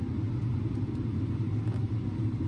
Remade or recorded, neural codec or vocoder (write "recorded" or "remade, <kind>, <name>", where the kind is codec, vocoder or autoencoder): recorded